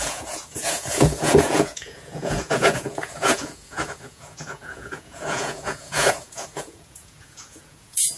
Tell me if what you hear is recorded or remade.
remade